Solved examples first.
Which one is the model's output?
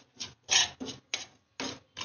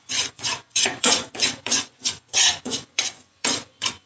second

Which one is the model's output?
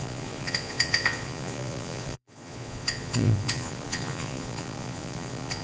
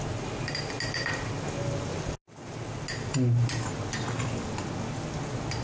first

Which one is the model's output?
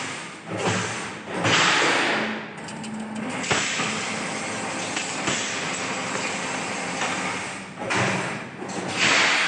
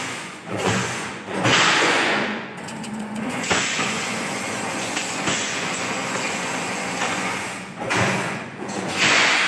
second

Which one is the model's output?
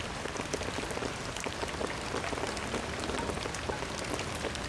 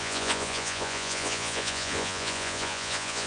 second